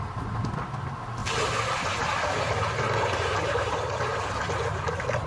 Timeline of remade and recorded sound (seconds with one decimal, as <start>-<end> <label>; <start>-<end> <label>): 0.0-5.3 recorded